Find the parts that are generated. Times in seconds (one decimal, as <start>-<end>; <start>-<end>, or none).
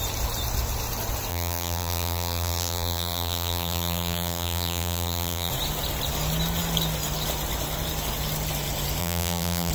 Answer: 1.3-5.5; 9.0-9.7